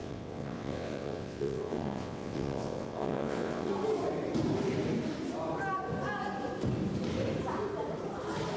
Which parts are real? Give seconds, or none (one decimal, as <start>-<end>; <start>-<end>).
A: 3.7-8.6